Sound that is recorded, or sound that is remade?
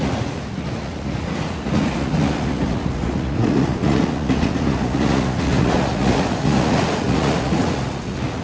remade